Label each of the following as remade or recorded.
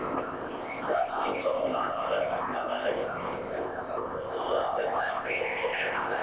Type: remade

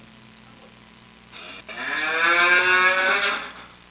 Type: recorded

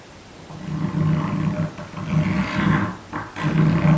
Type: recorded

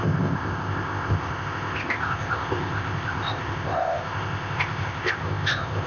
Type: remade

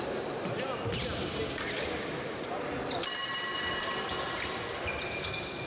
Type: recorded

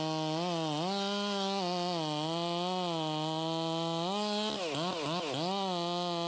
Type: recorded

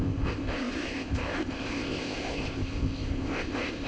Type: remade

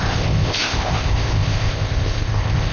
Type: remade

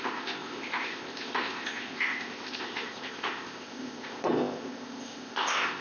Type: remade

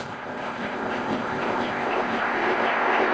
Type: remade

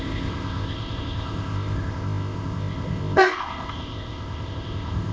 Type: remade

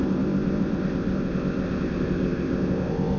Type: remade